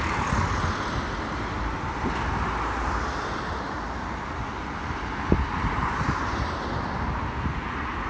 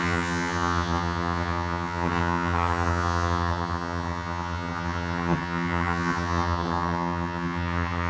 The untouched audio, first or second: first